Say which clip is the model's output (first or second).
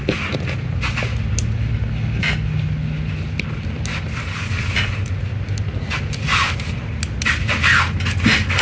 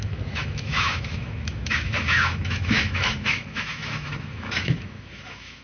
second